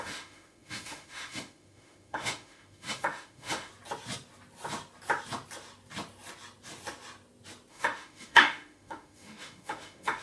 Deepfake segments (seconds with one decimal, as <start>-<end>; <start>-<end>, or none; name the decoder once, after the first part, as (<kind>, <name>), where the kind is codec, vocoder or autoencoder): 0.0-3.7 (autoencoder, DAC-VAE); 7.7-10.2